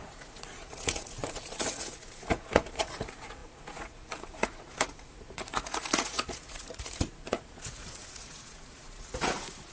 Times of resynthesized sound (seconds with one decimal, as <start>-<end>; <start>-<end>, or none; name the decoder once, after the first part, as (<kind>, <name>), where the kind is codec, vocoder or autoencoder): 0.0-9.7 (vocoder, Vocos)